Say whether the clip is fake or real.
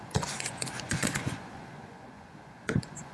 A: fake